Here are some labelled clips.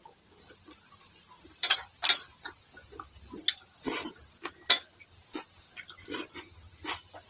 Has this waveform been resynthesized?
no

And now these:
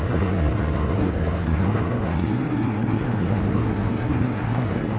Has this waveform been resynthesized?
yes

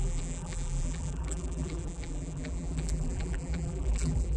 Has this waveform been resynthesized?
yes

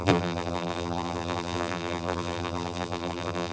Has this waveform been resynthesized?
yes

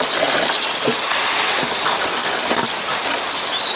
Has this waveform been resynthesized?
no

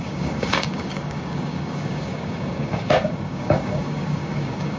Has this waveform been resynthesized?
yes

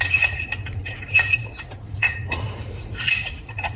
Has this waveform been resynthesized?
yes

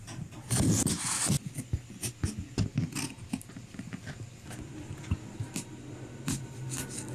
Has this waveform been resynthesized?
no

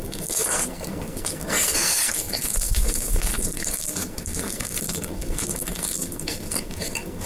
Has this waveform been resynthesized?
yes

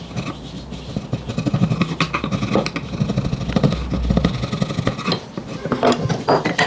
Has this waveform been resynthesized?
no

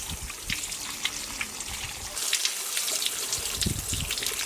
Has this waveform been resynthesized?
no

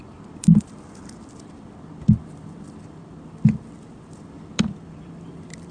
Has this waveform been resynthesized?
yes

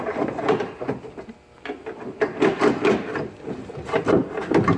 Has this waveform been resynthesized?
no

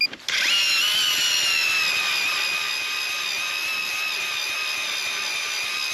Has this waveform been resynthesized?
no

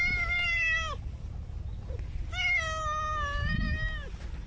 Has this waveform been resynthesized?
no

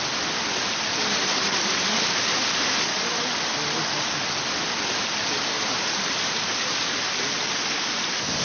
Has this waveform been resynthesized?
no